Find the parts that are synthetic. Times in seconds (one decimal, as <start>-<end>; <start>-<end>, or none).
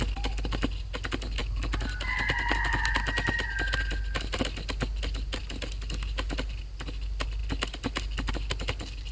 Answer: none